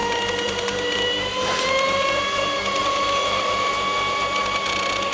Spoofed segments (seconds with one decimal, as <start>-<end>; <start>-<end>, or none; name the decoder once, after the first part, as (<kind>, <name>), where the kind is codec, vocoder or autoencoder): 0.0-2.6 (vocoder, BigVGAN v2)